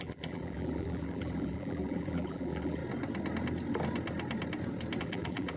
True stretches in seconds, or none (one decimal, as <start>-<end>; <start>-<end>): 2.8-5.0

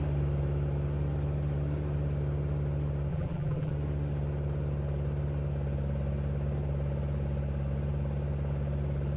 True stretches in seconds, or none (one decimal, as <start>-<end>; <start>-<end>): 0.0-3.1; 3.7-9.2

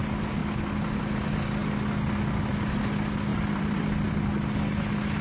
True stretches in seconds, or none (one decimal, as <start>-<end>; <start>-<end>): 0.0-0.4; 1.0-3.3; 4.1-5.2